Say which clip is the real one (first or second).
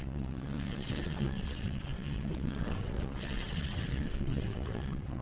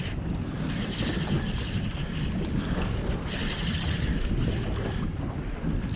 second